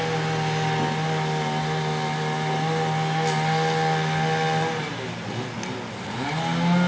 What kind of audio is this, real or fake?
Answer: real